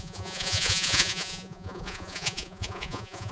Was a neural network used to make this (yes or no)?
yes